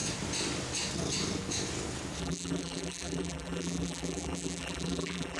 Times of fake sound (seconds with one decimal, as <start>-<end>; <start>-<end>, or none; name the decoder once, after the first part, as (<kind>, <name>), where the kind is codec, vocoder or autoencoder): 2.2-5.4 (vocoder, BigVGAN v2)